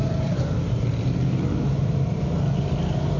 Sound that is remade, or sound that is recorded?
recorded